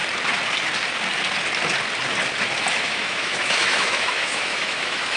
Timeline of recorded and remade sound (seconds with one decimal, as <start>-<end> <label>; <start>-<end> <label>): 0.0-2.7 recorded; 2.7-5.2 remade